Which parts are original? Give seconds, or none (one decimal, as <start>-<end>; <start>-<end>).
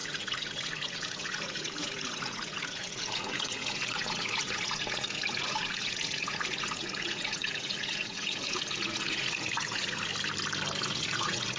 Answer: 10.1-10.8